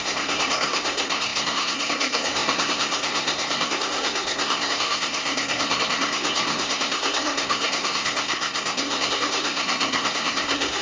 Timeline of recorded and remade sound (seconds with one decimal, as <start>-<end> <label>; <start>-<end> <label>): 0.0-10.8 remade